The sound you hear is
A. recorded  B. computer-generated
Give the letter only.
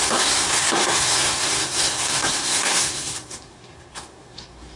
B